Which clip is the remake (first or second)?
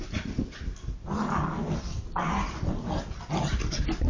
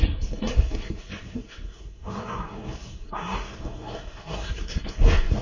second